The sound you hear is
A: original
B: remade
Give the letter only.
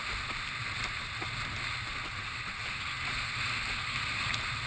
A